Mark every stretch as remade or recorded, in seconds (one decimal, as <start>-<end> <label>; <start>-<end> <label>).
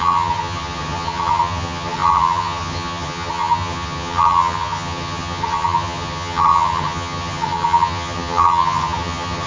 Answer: 0.0-9.5 remade